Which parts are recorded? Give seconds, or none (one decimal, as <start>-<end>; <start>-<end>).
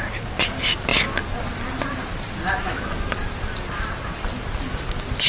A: 0.0-5.3